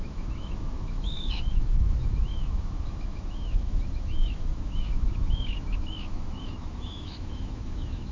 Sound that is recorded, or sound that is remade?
remade